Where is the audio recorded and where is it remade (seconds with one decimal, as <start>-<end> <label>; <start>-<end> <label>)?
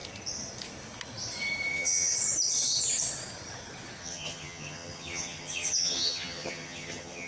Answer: 0.0-1.7 recorded; 1.7-2.1 remade; 2.1-4.0 recorded; 4.0-7.3 remade